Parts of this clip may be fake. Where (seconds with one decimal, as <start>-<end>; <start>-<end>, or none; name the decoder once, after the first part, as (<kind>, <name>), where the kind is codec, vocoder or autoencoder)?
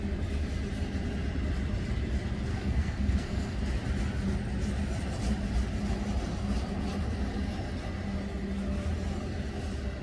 2.5-3.6 (codec, SNAC)